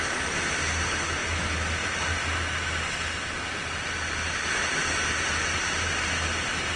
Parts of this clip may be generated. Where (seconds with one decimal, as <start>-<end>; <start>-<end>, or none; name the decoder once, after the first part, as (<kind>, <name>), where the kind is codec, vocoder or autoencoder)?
none